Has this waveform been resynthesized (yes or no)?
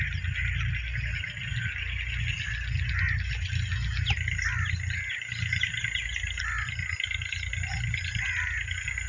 no